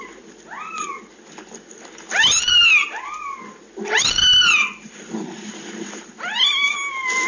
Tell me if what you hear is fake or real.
real